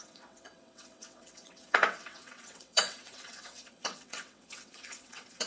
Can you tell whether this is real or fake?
fake